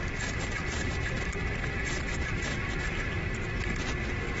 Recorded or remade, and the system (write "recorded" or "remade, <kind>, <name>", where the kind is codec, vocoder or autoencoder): remade, vocoder, BigVGAN v2